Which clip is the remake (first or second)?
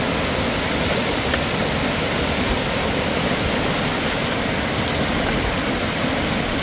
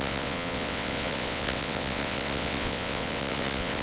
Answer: second